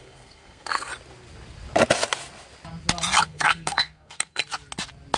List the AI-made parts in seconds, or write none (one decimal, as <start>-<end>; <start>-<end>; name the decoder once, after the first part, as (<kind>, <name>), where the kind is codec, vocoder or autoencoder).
0.0-0.9 (codec, SNAC); 3.2-4.4